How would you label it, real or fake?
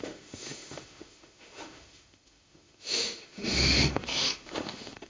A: fake